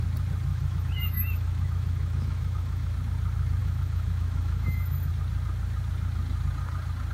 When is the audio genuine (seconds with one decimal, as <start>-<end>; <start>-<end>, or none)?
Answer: 0.0-0.5; 2.9-3.6; 5.1-7.1